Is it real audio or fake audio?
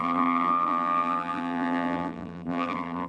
fake